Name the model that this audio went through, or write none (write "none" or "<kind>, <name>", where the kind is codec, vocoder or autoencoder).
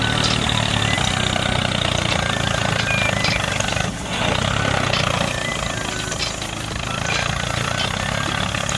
none